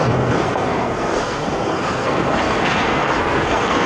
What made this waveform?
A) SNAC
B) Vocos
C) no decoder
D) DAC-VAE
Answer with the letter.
A